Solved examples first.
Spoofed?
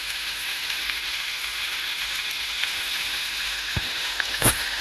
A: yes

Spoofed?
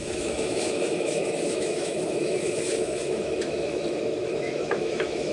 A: yes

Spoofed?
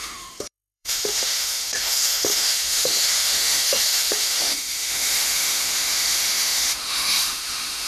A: yes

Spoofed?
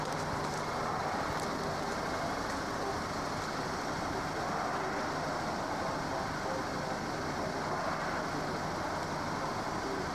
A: no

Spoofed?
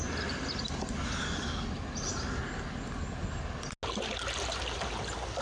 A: no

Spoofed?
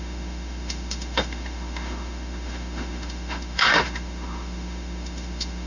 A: yes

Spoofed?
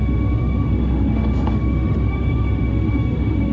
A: yes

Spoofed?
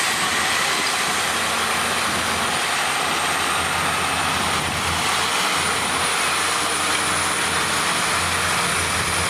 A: no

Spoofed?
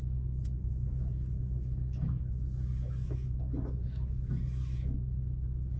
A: yes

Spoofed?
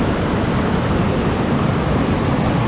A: no